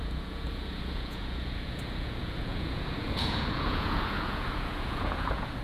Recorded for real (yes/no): no